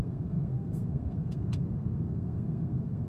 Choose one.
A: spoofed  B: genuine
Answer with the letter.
A